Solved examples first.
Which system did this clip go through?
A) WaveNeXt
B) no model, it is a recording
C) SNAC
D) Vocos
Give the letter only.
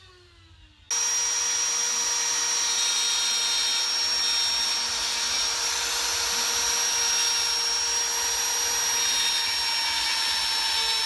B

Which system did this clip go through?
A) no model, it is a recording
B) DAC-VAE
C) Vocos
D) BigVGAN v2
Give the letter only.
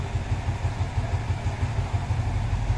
A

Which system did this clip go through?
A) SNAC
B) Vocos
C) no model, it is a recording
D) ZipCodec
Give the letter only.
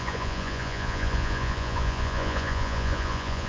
B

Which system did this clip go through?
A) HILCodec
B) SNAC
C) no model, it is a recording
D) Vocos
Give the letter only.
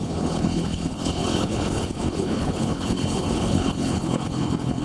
A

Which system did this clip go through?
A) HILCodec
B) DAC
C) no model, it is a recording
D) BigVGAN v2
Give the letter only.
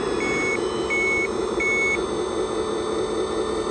C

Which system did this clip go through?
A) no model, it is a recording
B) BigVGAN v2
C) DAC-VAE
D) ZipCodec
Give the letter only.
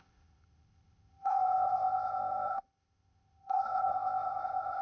D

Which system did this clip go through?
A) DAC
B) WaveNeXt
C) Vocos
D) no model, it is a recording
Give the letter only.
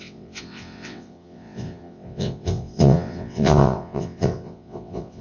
B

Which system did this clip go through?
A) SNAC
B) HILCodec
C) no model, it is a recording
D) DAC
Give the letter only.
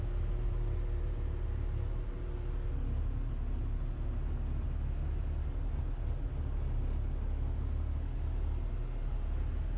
C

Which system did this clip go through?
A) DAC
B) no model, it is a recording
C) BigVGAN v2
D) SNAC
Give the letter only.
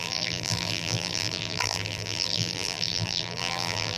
C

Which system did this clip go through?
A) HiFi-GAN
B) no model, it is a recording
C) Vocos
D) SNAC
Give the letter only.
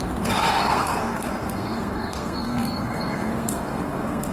D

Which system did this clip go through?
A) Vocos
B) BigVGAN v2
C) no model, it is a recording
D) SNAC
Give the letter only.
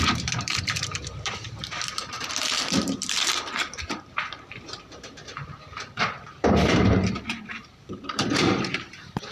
B